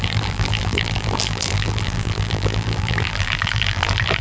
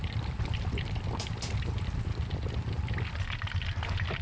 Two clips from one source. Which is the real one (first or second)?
second